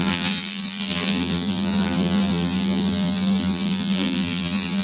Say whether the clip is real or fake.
fake